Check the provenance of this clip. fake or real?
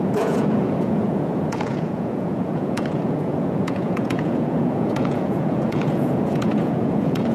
fake